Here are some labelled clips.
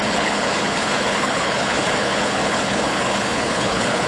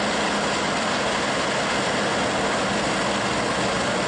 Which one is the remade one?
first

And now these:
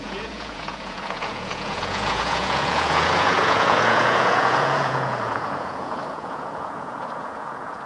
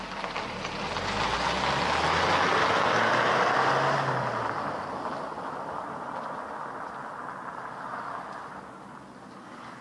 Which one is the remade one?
first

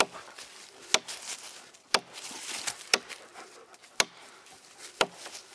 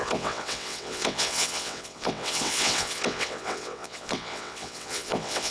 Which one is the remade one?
second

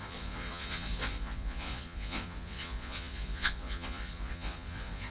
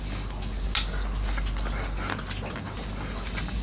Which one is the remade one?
first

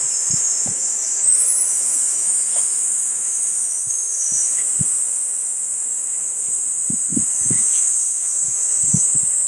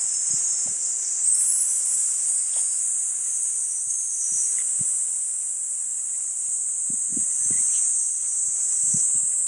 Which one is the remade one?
first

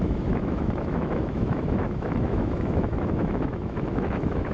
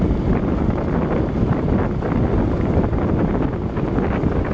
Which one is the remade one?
first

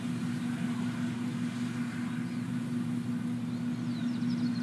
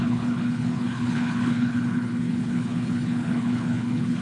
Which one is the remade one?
second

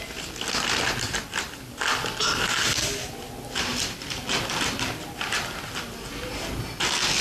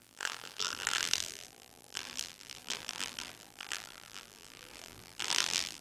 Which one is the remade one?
second